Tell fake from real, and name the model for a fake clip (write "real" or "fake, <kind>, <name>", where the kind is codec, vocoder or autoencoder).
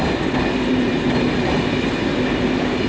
real